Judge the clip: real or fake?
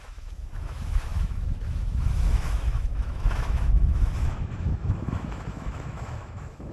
fake